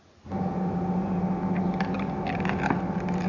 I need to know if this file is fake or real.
real